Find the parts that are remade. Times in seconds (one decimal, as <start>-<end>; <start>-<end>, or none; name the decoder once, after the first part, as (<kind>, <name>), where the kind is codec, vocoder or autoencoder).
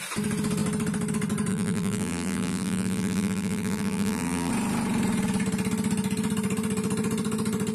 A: 1.5-4.5 (vocoder, BigVGAN v2)